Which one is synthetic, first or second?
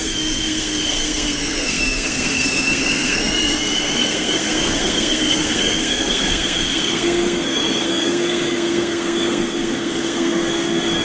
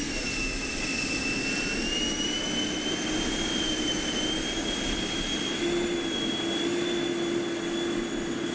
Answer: first